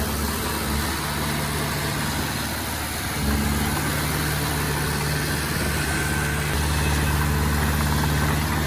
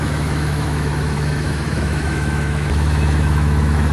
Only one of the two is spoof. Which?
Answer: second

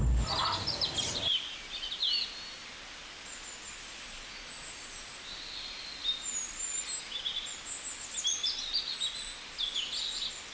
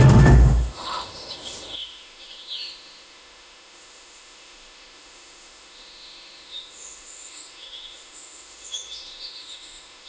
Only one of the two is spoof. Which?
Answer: second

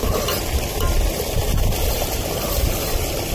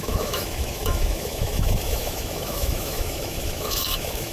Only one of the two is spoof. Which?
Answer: second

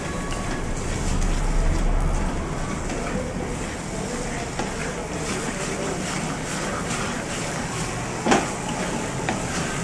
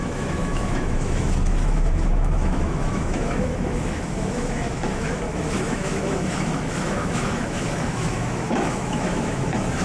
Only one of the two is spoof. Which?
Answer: second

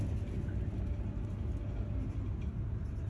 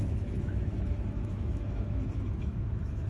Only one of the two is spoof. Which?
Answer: second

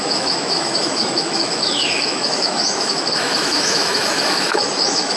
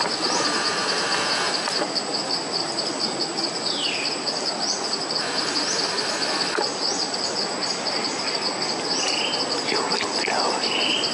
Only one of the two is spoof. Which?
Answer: first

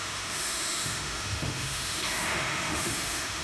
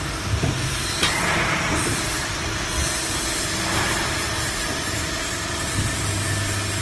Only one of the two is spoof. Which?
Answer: first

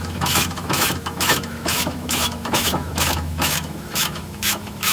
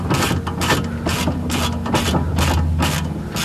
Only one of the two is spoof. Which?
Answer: first